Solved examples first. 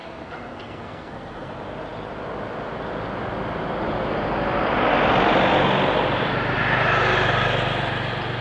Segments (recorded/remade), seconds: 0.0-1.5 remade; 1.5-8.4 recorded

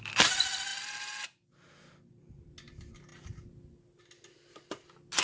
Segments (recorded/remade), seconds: 0.0-5.2 recorded

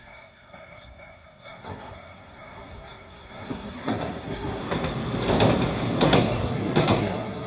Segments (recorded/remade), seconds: 0.0-4.6 remade; 4.6-6.0 recorded; 6.0-7.5 remade

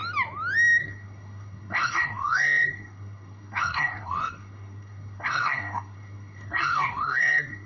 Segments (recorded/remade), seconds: 0.0-0.8 recorded; 0.8-7.7 remade

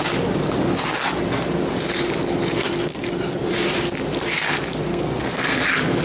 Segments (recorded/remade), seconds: 0.0-4.9 recorded; 4.9-5.6 remade; 5.6-6.0 recorded